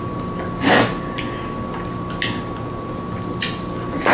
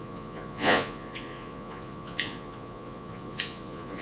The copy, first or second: second